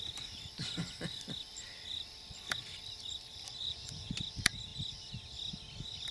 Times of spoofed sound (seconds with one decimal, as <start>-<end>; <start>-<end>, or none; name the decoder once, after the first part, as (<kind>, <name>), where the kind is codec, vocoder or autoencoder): 3.6-4.1 (vocoder, Vocos)